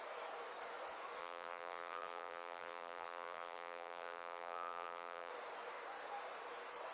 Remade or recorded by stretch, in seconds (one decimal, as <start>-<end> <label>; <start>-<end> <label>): 0.0-1.2 recorded; 1.2-5.3 remade; 5.3-6.9 recorded